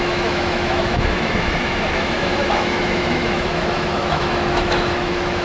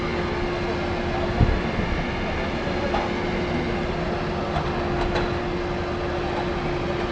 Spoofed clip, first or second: first